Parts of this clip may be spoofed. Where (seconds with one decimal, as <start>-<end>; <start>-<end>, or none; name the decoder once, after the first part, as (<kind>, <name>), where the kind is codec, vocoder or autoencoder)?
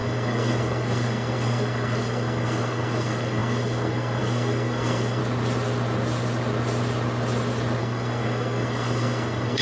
0.0-5.2 (codec, SNAC); 7.8-9.6